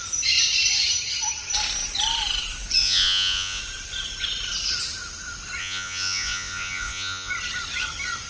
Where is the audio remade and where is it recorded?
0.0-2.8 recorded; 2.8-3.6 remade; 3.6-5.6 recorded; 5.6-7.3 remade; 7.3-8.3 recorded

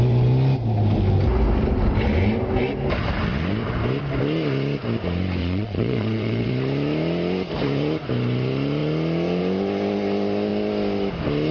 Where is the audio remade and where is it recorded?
0.0-5.4 recorded; 5.4-6.5 remade; 6.5-11.5 recorded

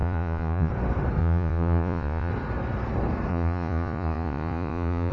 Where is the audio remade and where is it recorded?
0.0-0.7 remade; 0.7-1.2 recorded; 1.2-2.3 remade; 2.3-3.3 recorded; 3.3-5.1 remade

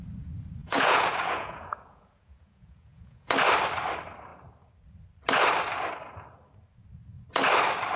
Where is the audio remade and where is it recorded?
0.0-0.6 recorded; 0.6-3.3 remade; 3.3-8.0 recorded

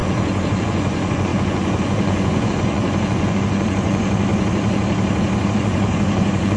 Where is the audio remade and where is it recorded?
0.0-4.3 remade; 4.3-5.5 recorded; 5.5-6.6 remade

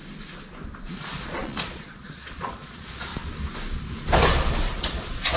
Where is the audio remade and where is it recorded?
0.0-0.8 recorded; 0.8-3.1 remade; 3.1-4.8 recorded; 4.8-5.4 remade

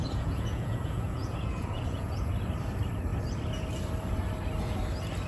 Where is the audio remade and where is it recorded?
0.0-2.3 remade; 2.3-5.3 recorded